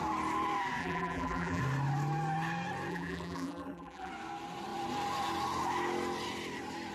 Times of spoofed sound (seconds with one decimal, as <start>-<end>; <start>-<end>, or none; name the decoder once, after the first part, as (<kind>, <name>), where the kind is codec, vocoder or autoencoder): 0.8-1.6 (vocoder, BigVGAN v2); 2.9-4.1